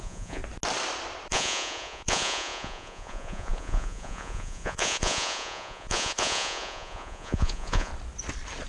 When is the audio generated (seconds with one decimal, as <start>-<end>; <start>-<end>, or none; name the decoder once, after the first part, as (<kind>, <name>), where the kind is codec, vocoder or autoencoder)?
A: 0.0-0.4 (vocoder, Vocos); 1.3-7.9